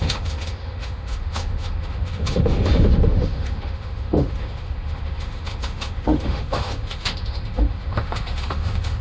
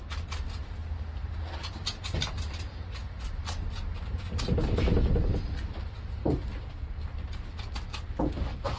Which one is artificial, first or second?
first